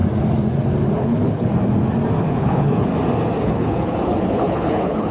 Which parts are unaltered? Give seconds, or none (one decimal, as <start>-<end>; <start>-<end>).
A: 0.0-1.0; 1.5-2.2; 2.9-3.4